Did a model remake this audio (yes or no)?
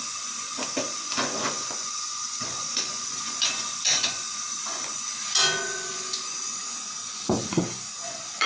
yes